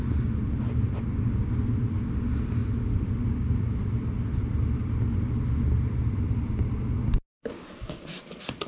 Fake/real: real